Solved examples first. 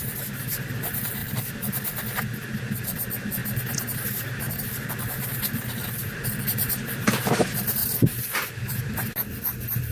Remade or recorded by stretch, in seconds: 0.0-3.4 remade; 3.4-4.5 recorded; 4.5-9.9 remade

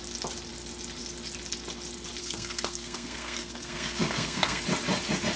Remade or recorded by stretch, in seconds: 0.0-2.2 recorded; 2.2-4.6 remade; 4.6-5.4 recorded

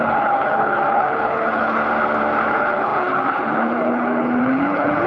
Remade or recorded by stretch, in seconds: 0.0-1.8 remade; 1.8-2.5 recorded; 2.5-5.1 remade